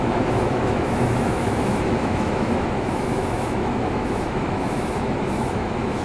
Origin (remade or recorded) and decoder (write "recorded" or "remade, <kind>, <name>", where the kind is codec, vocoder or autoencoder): remade, autoencoder, DAC-VAE